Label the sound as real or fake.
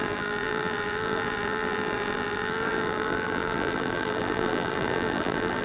fake